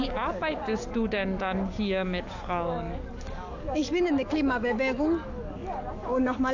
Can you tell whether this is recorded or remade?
remade